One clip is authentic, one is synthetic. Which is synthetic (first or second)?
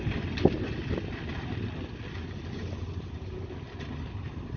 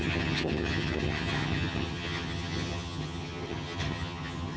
second